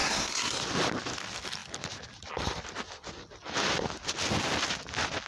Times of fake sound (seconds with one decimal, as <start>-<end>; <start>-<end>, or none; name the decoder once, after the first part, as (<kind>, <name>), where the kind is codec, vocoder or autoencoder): 0.0-0.6 (codec, SNAC)